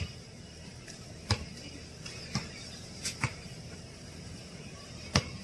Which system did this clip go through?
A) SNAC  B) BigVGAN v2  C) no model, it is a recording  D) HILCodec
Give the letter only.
B